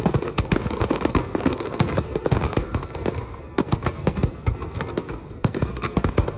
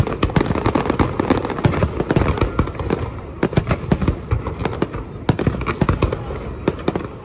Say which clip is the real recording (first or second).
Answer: second